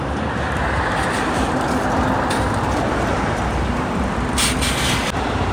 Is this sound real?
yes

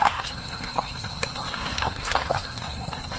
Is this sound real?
no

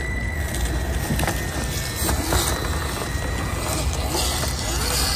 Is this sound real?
yes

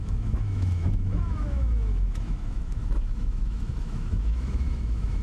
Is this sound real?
no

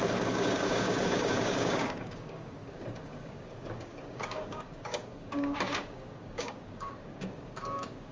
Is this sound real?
no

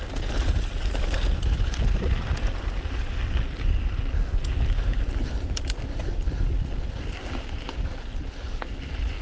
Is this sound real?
yes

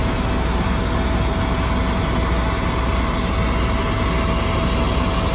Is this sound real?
yes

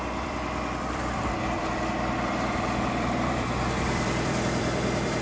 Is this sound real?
no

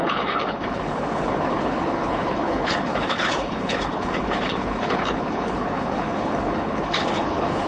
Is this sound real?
no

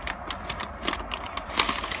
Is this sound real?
yes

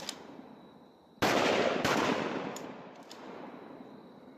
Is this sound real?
yes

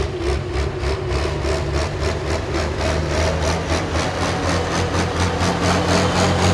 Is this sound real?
yes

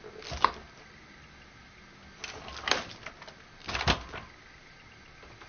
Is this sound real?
yes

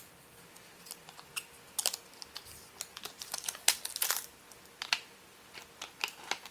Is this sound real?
yes